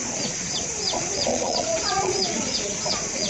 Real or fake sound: fake